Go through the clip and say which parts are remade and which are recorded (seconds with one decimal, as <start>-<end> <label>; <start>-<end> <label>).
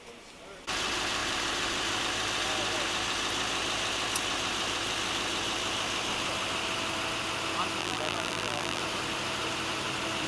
0.0-7.8 recorded; 7.8-8.8 remade; 8.8-10.3 recorded